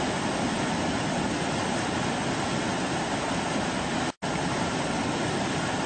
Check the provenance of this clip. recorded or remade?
recorded